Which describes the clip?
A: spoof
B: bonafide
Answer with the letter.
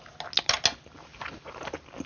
B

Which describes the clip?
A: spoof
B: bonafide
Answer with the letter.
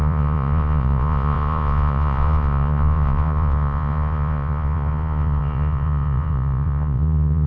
A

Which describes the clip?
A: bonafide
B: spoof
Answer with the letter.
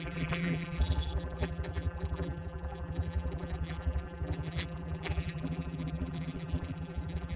B